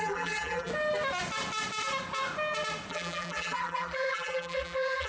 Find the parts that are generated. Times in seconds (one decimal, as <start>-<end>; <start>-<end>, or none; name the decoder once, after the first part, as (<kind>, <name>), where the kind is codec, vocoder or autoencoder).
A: 0.0-0.7 (vocoder, BigVGAN v2); 2.9-5.1